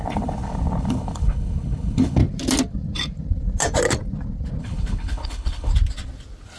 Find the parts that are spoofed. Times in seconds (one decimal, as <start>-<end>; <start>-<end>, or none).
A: 0.0-2.2; 4.6-5.7